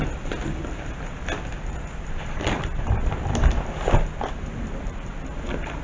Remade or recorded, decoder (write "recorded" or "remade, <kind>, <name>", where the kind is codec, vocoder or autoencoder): recorded